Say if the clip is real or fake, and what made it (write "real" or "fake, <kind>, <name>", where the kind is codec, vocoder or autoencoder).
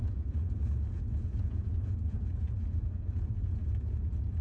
fake, vocoder, Vocos